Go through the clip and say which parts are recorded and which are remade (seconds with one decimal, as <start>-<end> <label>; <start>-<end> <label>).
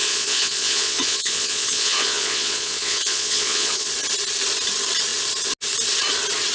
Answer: 0.0-3.9 remade; 3.9-6.5 recorded